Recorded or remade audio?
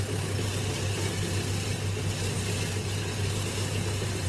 recorded